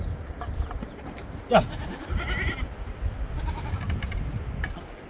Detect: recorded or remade recorded